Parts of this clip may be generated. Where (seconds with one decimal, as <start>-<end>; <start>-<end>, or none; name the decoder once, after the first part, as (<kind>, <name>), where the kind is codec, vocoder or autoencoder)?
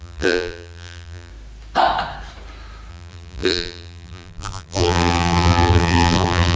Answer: 0.0-1.3 (vocoder, BigVGAN v2); 2.9-6.6